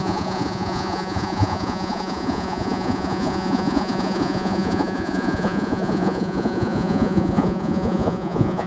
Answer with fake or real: fake